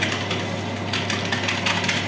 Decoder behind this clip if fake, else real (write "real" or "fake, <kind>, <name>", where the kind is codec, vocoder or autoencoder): real